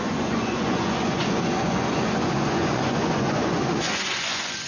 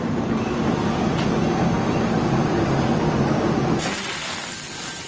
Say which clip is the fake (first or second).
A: first